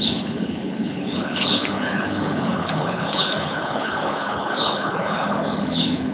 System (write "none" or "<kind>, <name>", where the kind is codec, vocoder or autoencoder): codec, HILCodec